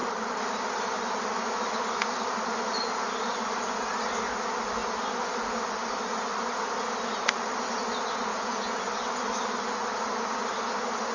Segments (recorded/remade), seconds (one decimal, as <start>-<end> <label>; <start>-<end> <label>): 0.0-8.3 recorded; 8.3-8.8 remade; 8.8-11.1 recorded